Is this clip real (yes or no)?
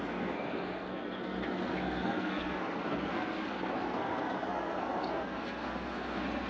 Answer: no